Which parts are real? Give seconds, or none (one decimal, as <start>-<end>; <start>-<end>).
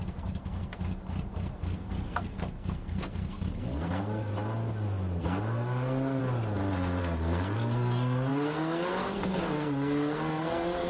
4.3-5.2; 6.2-7.0